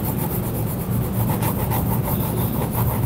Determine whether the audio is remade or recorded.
recorded